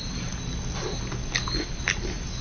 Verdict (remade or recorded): recorded